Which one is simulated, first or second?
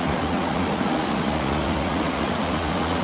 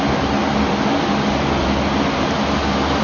first